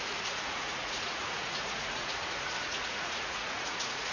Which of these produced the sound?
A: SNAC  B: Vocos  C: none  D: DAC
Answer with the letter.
B